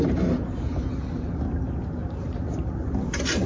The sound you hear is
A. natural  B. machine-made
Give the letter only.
A